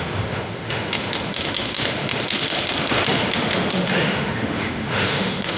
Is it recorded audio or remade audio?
remade